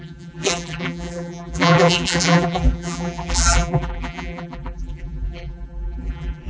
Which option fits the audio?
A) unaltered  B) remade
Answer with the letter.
B